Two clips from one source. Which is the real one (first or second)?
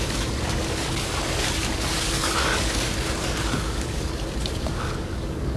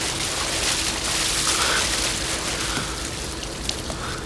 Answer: second